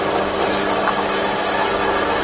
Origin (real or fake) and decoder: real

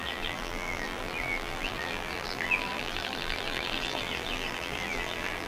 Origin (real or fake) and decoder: fake, vocoder, BigVGAN v2